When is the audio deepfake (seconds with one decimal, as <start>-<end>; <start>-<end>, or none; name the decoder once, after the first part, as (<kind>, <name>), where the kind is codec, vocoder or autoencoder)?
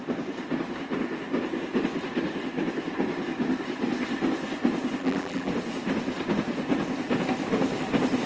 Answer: 5.0-5.5 (vocoder, BigVGAN v2)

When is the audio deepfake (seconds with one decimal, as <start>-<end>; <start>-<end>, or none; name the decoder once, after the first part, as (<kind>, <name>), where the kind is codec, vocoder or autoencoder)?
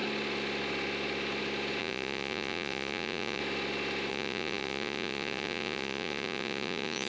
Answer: 1.8-3.4 (vocoder, Vocos); 4.1-7.1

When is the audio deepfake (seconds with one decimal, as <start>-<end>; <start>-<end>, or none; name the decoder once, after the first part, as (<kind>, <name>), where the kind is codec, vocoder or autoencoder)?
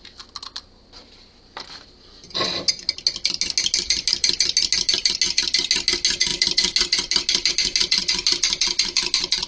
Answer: none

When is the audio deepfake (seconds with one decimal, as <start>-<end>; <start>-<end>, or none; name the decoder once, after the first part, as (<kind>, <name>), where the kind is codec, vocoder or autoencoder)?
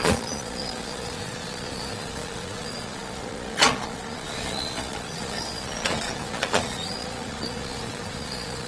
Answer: 0.0-8.7 (vocoder, Vocos)